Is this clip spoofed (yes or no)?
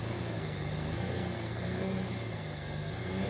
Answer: yes